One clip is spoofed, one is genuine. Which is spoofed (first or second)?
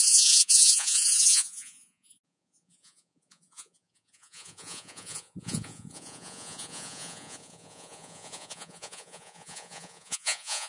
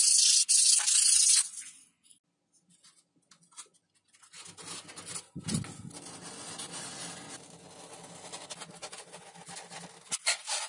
first